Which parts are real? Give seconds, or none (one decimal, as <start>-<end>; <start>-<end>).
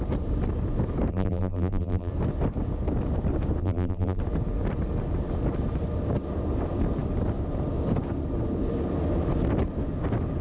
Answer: 0.0-1.1; 2.1-3.6; 4.2-10.4